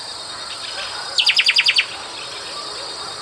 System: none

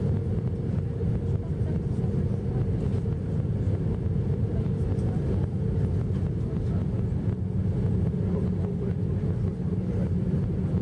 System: none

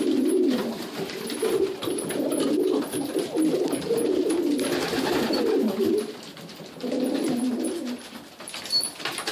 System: vocoder, BigVGAN v2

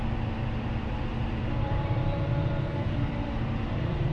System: vocoder, BigVGAN v2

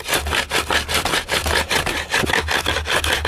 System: none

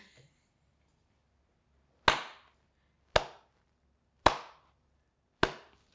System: none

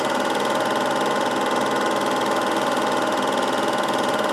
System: none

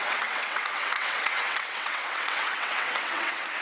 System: vocoder, WaveNeXt